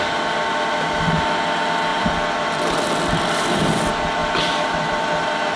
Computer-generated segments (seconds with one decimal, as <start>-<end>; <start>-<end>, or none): 1.9-3.8; 4.2-5.0